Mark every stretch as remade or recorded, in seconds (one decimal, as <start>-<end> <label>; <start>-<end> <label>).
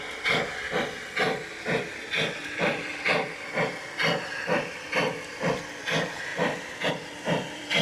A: 0.0-2.9 remade; 2.9-4.7 recorded; 4.7-7.8 remade